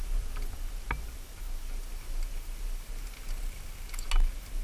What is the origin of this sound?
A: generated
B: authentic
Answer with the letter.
B